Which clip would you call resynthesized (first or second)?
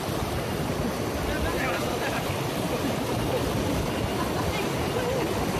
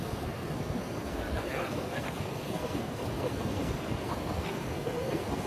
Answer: second